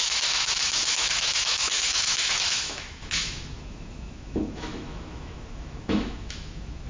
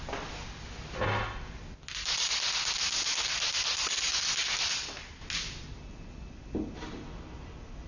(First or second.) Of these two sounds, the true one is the second